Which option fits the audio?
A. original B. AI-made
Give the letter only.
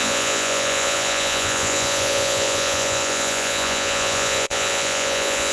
B